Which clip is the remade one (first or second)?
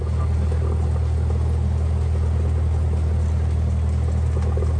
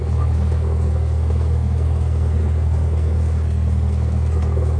second